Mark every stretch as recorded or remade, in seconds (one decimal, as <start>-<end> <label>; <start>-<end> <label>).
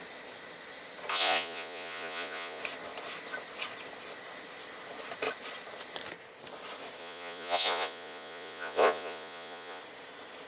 0.0-1.1 recorded; 1.1-2.6 remade; 2.6-7.0 recorded; 7.0-9.8 remade; 9.8-10.5 recorded